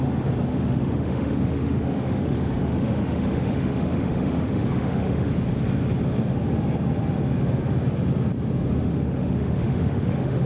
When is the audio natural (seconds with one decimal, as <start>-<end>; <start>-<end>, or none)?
0.0-0.5; 5.3-8.8